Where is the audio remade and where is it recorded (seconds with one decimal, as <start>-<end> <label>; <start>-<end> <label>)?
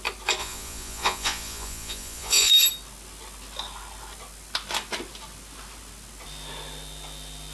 0.0-0.4 recorded; 0.4-2.5 remade; 2.5-7.5 recorded